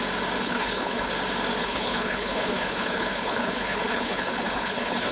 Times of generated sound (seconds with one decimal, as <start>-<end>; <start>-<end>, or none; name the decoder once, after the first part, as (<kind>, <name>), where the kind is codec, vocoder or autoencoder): 0.4-1.1 (codec, HILCodec); 1.6-5.1